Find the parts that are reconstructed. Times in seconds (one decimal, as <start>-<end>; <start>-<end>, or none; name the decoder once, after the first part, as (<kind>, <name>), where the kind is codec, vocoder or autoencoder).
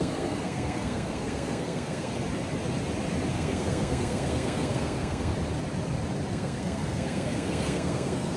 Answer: 0.0-2.1 (codec, SNAC); 3.3-5.3; 6.3-8.4